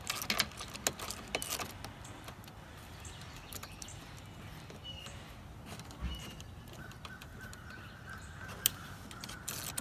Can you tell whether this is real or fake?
real